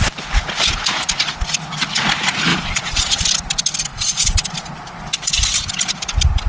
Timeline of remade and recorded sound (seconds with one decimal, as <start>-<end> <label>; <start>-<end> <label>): 0.0-2.5 recorded; 2.5-3.2 remade; 3.2-3.9 recorded; 3.9-4.5 remade; 4.5-6.5 recorded